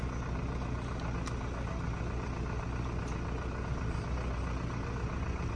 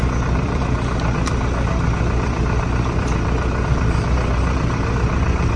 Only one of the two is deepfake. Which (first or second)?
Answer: second